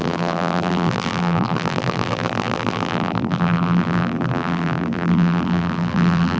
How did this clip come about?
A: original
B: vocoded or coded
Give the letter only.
B